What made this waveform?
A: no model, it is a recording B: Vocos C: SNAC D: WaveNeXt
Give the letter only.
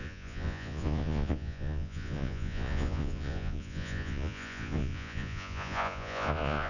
B